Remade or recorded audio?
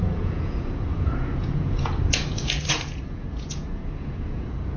remade